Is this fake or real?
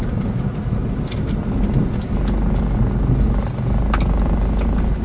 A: real